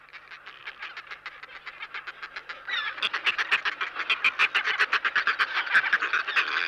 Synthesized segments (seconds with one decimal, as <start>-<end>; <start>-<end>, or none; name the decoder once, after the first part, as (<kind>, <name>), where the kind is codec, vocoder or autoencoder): none